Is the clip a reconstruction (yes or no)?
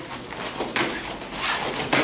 no